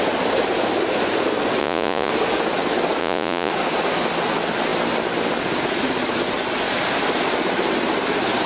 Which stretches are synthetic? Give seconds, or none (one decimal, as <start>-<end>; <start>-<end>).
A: 1.6-2.1; 3.0-3.5